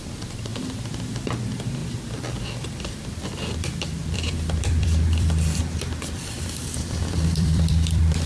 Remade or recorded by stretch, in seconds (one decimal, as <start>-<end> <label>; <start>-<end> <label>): 0.0-0.5 remade; 0.5-1.3 recorded; 1.3-8.3 remade